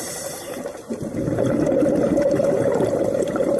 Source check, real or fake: fake